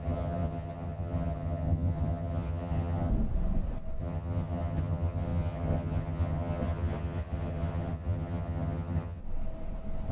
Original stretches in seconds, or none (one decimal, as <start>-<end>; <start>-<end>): 3.1-4.0; 9.2-10.1